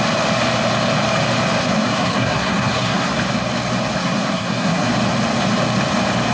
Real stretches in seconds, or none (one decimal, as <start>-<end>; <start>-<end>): 0.0-1.6; 3.1-4.0; 4.9-6.3